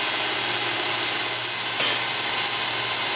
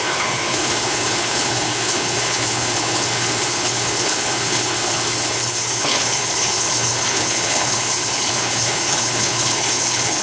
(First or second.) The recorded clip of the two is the first